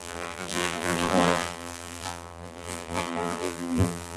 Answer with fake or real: fake